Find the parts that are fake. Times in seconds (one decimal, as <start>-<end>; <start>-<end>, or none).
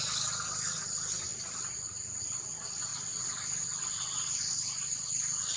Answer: none